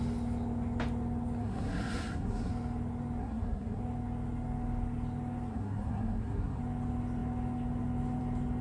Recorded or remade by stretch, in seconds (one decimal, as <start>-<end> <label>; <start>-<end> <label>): 0.0-1.4 recorded; 1.4-2.5 remade; 2.5-3.2 recorded; 3.2-3.8 remade; 3.8-5.5 recorded; 5.5-6.6 remade; 6.6-8.6 recorded